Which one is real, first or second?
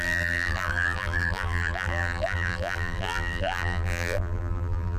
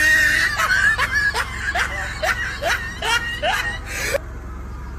second